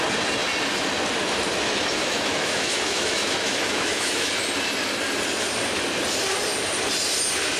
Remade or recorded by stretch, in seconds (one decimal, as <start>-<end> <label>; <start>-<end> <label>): 0.0-2.0 recorded; 2.0-4.3 remade; 4.3-7.6 recorded